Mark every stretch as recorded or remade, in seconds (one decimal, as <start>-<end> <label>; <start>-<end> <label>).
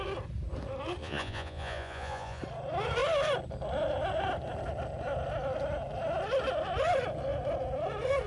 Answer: 0.0-1.0 recorded; 1.0-2.4 remade; 2.4-8.3 recorded